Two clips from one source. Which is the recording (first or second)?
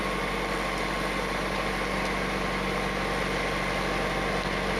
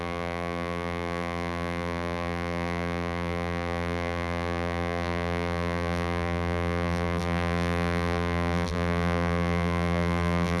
first